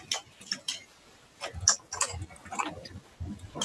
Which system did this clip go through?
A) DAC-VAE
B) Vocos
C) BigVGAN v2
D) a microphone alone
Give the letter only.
D